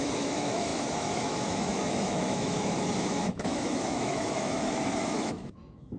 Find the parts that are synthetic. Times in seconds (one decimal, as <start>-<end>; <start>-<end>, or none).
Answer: 0.0-6.0